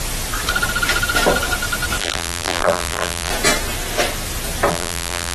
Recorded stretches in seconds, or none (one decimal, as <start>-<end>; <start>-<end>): 0.0-2.0; 3.3-4.7